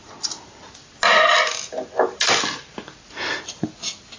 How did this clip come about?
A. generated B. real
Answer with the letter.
B